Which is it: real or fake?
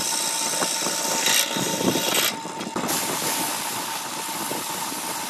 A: real